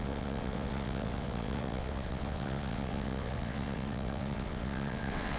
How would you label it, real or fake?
fake